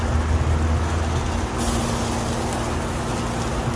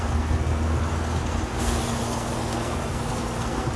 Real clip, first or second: first